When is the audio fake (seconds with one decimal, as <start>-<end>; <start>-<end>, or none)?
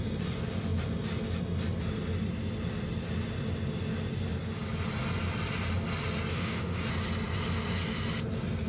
6.3-6.8